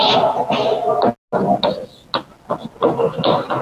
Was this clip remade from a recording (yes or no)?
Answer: no